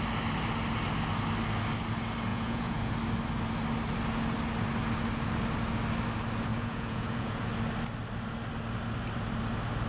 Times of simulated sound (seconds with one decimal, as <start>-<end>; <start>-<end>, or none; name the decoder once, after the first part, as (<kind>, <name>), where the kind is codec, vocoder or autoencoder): 2.3-2.9 (vocoder, Vocos); 6.5-7.4